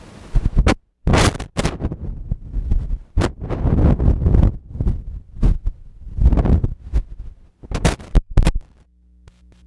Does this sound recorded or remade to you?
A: recorded